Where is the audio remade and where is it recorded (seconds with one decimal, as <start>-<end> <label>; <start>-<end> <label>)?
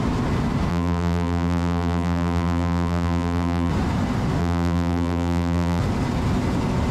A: 0.0-0.7 recorded; 0.7-3.7 remade; 3.7-4.4 recorded; 4.4-5.8 remade; 5.8-6.9 recorded